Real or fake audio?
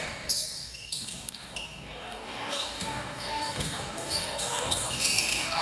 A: fake